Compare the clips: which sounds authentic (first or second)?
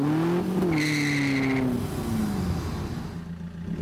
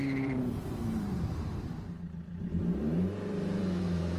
first